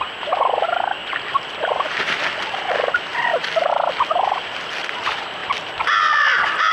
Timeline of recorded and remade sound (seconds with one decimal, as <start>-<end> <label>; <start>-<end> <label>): 0.0-5.4 recorded; 5.4-6.7 remade